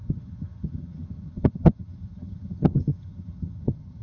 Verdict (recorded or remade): remade